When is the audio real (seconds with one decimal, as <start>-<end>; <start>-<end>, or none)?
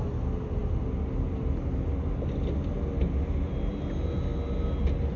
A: 0.0-5.2